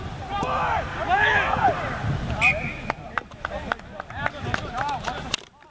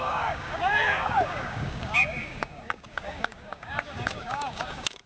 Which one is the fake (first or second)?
second